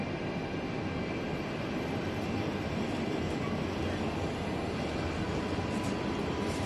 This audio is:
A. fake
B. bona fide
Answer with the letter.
B